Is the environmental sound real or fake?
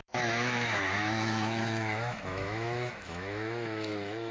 fake